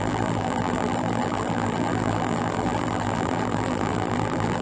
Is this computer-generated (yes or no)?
yes